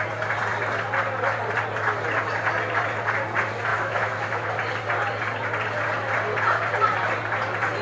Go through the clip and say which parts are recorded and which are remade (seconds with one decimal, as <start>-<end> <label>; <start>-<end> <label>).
0.0-3.7 recorded; 3.7-4.5 remade; 4.5-7.8 recorded